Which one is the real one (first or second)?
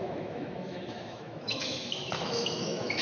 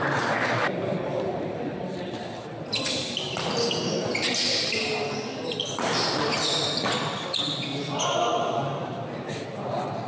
second